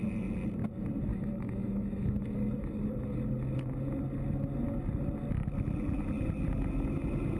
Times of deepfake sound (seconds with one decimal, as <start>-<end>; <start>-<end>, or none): 1.1-2.2